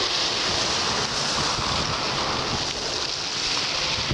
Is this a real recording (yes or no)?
yes